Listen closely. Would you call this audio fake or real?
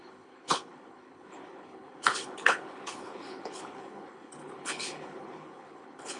fake